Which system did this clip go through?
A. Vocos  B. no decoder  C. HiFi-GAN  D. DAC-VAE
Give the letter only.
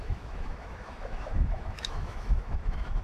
D